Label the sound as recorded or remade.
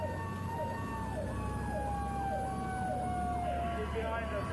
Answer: recorded